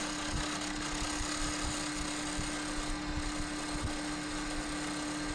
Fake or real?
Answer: real